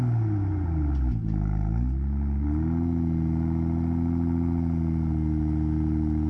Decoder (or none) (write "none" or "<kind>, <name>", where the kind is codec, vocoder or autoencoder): none